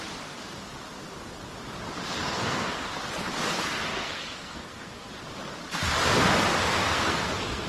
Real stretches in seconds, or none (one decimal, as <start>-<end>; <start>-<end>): 0.0-2.2; 2.9-3.9; 5.1-6.8